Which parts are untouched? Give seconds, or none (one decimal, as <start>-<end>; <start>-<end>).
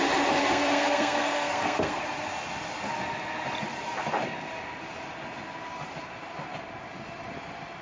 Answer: 0.0-0.4; 2.0-7.8